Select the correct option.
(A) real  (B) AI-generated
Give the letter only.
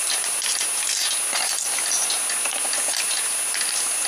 A